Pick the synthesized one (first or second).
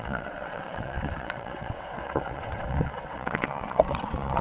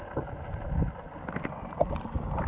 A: first